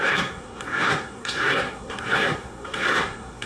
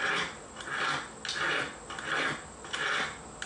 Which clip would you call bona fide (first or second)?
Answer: second